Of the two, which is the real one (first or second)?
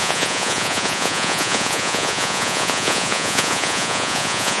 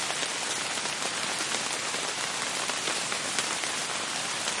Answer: second